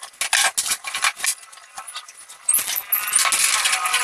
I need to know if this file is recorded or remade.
recorded